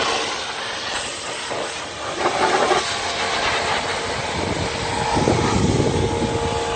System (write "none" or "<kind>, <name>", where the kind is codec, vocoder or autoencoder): none